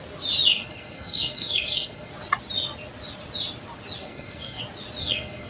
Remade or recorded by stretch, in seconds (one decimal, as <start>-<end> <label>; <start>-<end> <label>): 0.0-0.5 recorded; 0.5-2.1 remade; 2.1-4.0 recorded; 4.0-4.6 remade; 4.6-5.0 recorded; 5.0-5.5 remade